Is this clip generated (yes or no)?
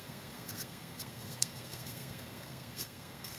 yes